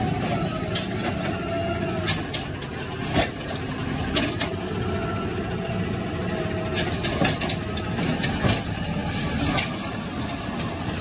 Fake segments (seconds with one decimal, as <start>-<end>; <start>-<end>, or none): none